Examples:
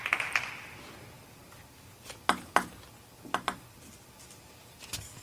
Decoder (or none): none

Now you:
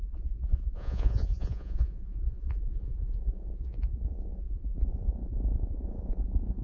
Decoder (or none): vocoder, Vocos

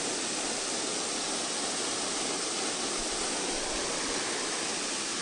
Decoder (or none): none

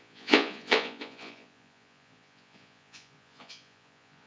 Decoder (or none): vocoder, Vocos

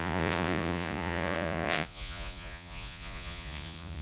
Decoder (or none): vocoder, Vocos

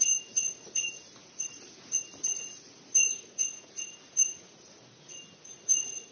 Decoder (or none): vocoder, Vocos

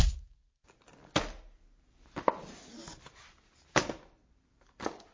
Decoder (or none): none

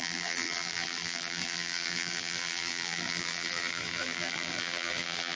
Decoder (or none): vocoder, BigVGAN v2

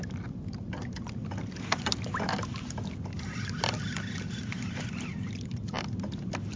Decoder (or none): none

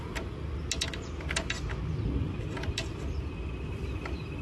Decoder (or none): none